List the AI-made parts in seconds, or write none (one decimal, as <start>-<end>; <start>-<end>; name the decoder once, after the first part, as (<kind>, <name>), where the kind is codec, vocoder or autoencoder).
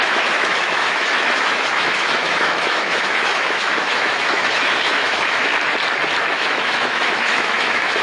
0.0-5.5 (autoencoder, DAC-VAE); 6.2-8.0